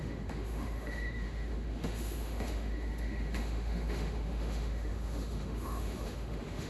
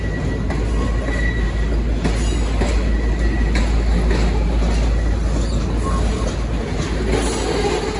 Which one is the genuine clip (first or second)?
second